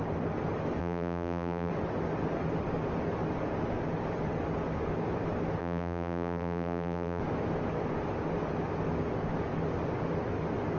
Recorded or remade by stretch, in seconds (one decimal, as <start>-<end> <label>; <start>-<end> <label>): 0.0-0.8 recorded; 0.8-1.7 remade; 1.7-5.6 recorded; 5.6-7.2 remade; 7.2-10.8 recorded